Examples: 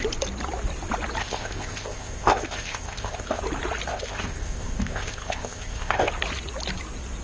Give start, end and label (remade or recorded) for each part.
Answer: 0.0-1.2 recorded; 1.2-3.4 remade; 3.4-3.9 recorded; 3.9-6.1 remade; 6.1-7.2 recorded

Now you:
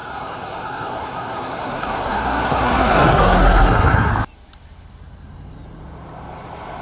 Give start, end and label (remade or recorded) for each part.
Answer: 0.0-4.1 remade; 4.1-6.8 recorded

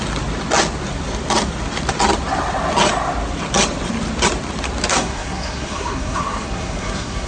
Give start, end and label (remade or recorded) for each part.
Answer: 0.0-4.9 recorded; 4.9-7.3 remade